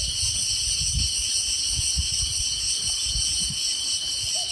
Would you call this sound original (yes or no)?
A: yes